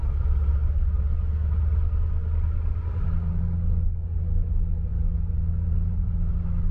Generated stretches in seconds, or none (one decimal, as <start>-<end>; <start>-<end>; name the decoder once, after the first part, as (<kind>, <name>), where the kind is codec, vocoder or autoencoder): 4.9-6.3 (vocoder, Vocos)